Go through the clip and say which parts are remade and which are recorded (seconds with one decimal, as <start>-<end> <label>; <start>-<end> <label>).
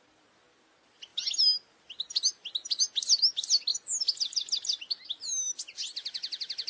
0.0-6.7 recorded